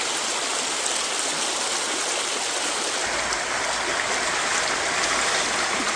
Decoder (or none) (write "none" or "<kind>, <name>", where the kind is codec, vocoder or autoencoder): none